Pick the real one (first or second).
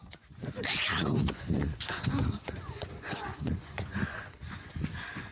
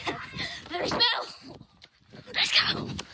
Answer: second